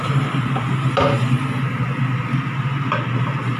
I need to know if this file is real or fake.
real